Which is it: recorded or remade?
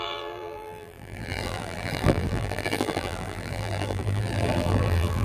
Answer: remade